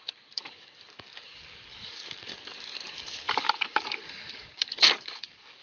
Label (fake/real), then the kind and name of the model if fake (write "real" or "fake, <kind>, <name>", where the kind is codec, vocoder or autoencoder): fake, codec, DAC